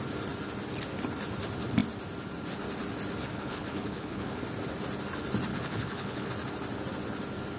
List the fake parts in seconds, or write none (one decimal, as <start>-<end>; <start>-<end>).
3.2-4.4; 5.5-6.3